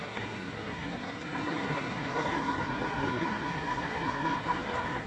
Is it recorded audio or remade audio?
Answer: remade